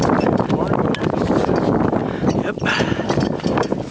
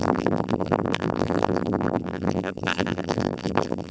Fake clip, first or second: second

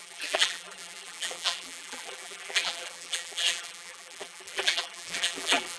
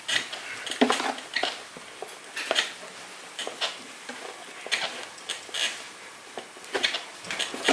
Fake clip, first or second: first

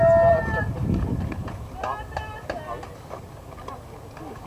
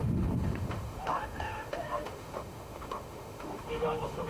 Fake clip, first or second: second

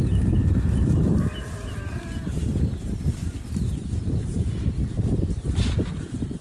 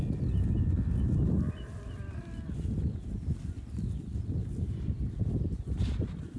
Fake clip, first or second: first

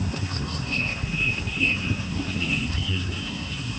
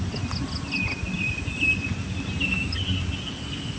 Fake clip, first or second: first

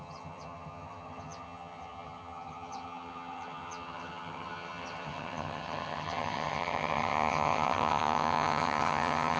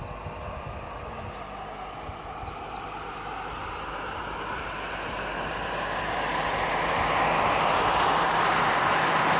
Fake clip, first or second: first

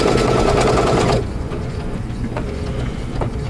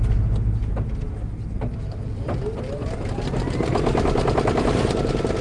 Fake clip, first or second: first